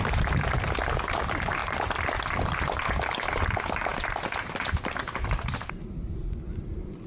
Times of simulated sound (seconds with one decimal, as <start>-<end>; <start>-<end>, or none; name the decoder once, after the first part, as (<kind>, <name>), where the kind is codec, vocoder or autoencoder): 1.6-3.4 (vocoder, BigVGAN v2); 3.9-5.5